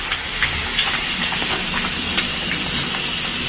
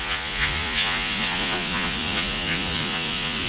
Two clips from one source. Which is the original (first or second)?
first